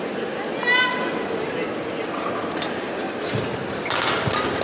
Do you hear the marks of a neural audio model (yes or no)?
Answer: no